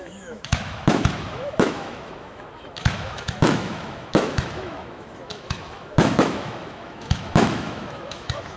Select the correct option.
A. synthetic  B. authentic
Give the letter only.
A